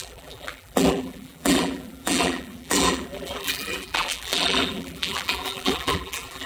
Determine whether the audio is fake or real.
fake